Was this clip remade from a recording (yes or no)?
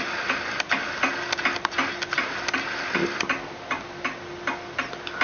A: no